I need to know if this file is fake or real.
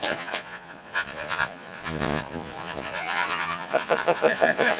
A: fake